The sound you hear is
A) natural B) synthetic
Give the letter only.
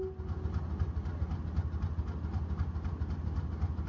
A